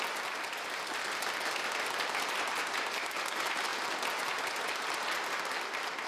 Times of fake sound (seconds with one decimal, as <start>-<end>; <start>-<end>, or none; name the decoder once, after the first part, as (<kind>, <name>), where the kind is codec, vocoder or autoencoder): none